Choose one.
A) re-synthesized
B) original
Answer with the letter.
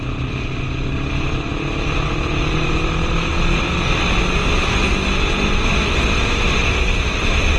B